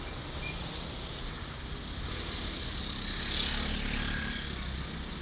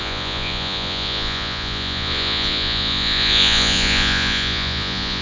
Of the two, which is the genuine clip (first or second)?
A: first